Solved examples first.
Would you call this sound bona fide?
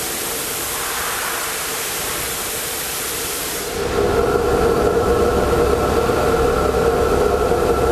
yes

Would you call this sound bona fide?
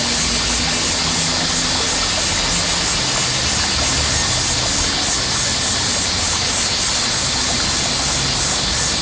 yes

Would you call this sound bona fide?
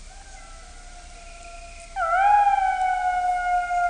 yes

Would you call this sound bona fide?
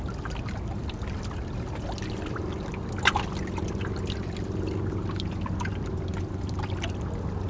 yes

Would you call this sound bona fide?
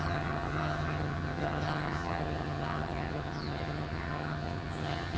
no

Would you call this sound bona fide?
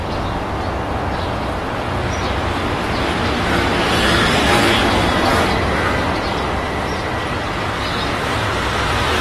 yes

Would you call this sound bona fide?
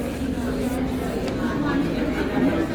yes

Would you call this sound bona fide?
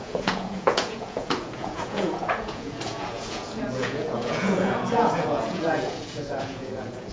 no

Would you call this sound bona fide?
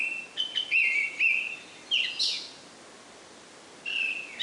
yes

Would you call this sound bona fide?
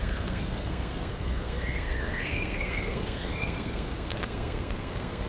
no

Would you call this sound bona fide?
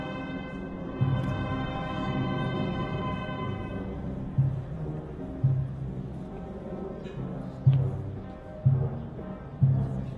yes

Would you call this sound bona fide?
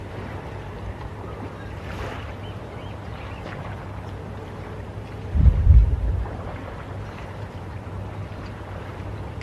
no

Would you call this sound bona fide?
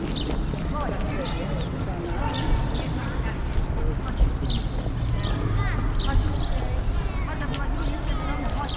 yes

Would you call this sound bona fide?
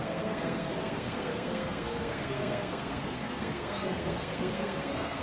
no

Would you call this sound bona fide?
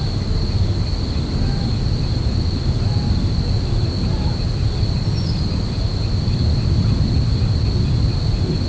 yes